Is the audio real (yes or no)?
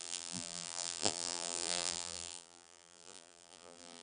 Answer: no